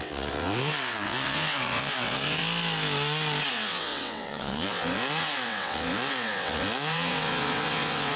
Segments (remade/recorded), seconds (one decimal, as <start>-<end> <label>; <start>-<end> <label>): 0.0-2.4 remade; 2.4-3.5 recorded; 3.5-8.2 remade